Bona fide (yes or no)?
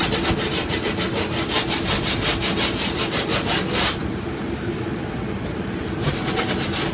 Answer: yes